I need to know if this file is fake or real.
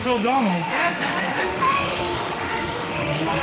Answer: fake